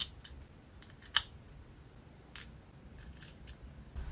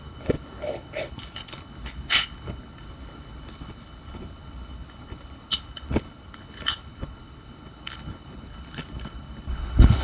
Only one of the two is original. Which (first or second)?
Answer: first